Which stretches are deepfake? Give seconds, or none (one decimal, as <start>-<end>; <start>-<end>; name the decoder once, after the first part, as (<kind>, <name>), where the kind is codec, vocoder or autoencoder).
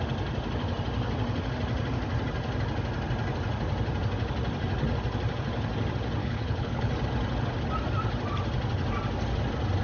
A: 6.2-6.9 (codec, HILCodec)